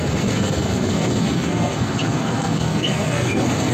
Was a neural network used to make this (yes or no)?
yes